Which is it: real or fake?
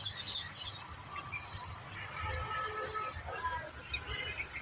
real